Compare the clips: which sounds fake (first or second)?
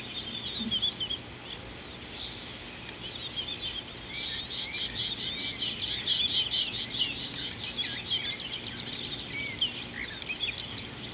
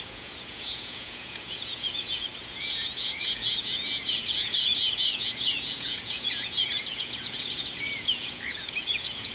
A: second